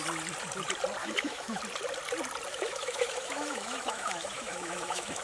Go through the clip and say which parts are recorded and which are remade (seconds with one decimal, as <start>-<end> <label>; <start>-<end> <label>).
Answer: 0.0-1.0 recorded; 1.0-1.6 remade; 1.6-2.5 recorded; 2.5-5.2 remade